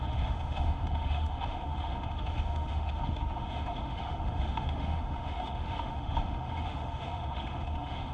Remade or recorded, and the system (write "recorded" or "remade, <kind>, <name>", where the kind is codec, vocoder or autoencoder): remade, autoencoder, DAC-VAE